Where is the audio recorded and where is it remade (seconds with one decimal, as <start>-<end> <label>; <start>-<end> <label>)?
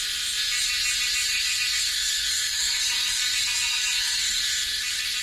0.0-1.3 recorded; 1.3-4.4 remade; 4.4-5.2 recorded